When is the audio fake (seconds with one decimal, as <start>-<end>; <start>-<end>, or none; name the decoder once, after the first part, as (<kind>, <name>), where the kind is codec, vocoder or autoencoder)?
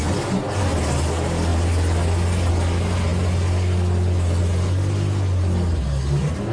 none